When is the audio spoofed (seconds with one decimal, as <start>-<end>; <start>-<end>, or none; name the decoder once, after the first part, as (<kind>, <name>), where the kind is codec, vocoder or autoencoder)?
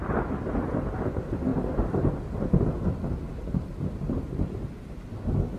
none